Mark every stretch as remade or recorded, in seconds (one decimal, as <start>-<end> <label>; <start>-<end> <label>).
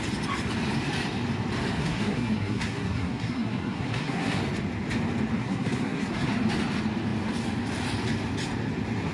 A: 0.0-1.8 recorded; 1.8-4.4 remade; 4.4-5.4 recorded; 5.4-6.3 remade; 6.3-9.1 recorded